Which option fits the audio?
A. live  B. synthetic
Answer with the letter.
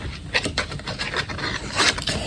B